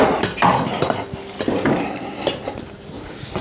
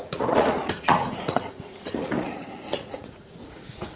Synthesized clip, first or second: second